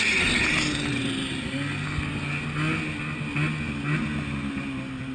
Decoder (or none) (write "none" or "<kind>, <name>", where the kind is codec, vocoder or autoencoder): none